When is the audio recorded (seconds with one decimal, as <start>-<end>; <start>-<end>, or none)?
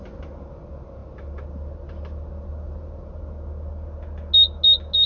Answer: 0.0-5.1